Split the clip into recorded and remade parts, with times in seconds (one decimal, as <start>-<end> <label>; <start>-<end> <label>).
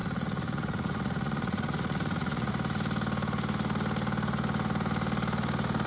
0.0-2.5 remade; 2.5-5.9 recorded